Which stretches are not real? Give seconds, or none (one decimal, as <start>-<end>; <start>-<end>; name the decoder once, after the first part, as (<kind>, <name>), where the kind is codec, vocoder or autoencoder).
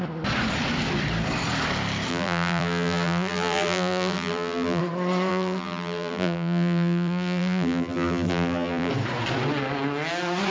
2.1-4.8 (vocoder, BigVGAN v2); 5.3-8.9